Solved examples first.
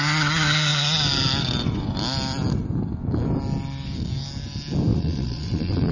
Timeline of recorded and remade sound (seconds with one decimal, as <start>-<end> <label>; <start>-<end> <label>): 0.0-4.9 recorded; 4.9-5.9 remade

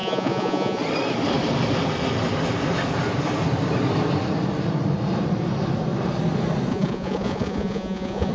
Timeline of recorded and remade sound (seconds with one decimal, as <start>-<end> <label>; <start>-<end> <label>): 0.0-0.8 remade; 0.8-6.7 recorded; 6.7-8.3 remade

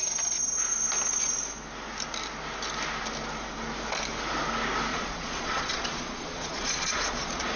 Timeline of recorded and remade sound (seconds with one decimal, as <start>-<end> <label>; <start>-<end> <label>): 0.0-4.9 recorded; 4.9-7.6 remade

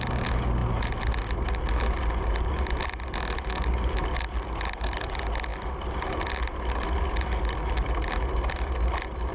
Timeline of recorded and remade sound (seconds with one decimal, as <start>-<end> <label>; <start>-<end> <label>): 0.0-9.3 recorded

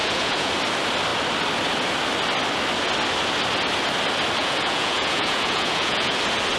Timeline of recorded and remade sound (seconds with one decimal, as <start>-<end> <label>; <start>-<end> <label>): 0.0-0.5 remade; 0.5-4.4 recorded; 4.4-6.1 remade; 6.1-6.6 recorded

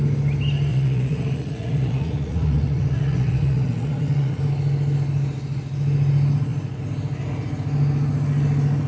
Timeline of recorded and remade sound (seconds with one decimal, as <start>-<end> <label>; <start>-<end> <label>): 0.0-0.7 recorded; 0.7-4.4 remade; 4.4-8.9 recorded

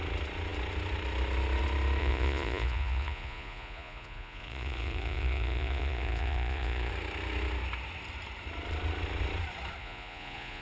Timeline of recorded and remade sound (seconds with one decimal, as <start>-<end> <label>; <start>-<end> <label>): 0.0-2.0 recorded; 2.0-6.9 remade; 6.9-9.8 recorded; 9.8-10.6 remade

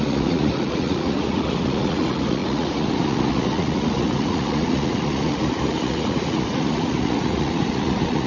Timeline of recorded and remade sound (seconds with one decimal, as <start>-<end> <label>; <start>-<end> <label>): 0.0-8.3 remade